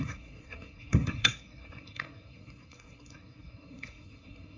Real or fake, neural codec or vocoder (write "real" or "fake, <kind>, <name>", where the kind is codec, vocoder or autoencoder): fake, codec, SNAC